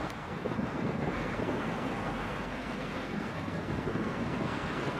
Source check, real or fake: fake